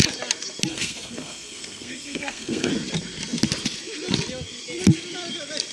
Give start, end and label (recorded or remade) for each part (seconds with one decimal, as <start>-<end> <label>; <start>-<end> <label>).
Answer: 0.0-0.7 recorded; 0.7-2.7 remade; 2.7-5.7 recorded